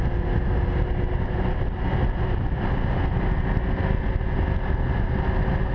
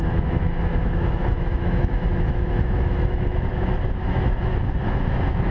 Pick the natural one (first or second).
first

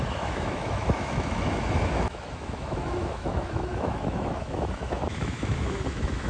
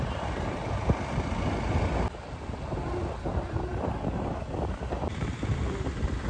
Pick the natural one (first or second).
second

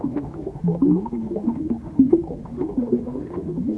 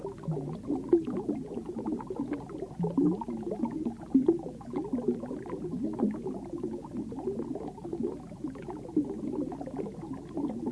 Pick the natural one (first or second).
second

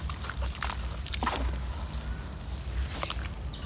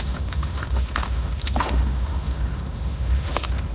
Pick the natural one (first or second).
first